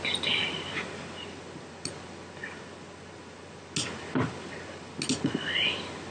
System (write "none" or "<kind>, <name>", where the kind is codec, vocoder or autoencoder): none